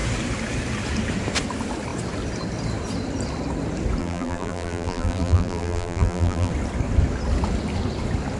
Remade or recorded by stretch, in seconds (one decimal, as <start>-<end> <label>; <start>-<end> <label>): 0.0-4.0 recorded; 4.0-6.5 remade; 6.5-8.4 recorded